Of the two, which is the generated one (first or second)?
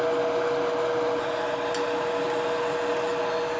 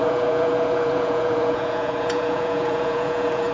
second